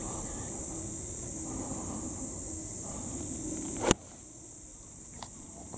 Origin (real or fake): real